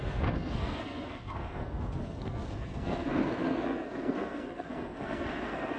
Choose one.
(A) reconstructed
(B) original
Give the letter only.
A